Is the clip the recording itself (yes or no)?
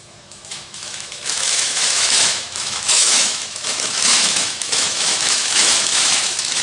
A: no